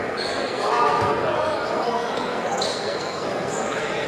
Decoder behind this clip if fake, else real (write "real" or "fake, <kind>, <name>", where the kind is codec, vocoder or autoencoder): fake, codec, SNAC